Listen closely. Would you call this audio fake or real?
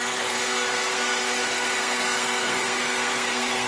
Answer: fake